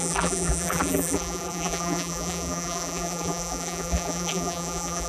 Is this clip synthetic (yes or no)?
yes